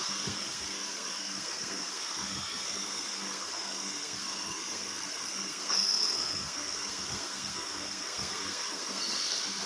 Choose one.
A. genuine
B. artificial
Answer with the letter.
B